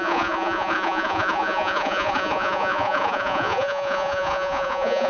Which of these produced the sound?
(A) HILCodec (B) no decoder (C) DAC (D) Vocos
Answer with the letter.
D